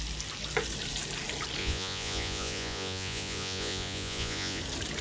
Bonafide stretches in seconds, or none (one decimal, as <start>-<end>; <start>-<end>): 0.0-1.6; 4.6-5.0